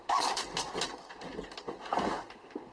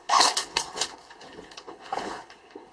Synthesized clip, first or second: second